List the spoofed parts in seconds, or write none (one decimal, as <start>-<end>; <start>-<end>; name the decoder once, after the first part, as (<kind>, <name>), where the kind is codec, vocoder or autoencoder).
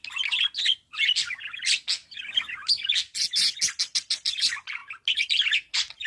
none